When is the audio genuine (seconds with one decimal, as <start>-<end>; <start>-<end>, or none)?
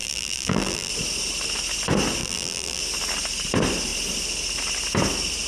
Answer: 0.9-2.2; 2.8-5.5